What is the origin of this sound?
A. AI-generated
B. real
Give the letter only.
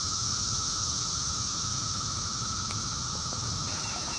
A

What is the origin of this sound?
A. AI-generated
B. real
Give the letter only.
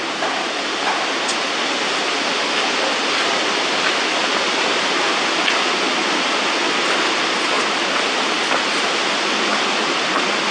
B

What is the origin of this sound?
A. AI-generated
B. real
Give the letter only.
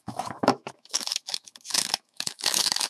A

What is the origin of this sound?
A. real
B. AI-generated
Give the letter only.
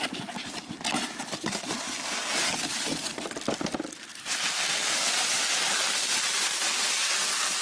A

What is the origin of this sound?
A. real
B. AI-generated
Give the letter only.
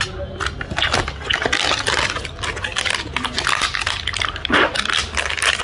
A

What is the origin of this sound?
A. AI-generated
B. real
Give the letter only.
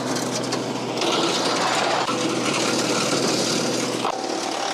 B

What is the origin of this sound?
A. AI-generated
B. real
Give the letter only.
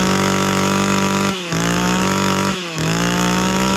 A